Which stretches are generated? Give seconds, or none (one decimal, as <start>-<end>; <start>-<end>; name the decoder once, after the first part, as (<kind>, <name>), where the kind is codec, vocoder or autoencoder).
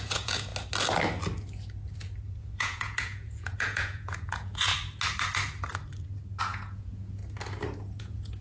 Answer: 0.0-0.5 (vocoder, Vocos); 2.4-4.7; 6.4-7.2; 8.0-8.4